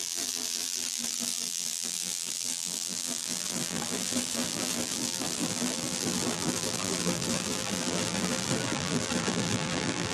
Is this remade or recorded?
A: remade